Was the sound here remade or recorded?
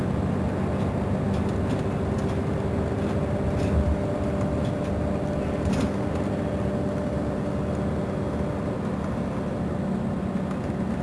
recorded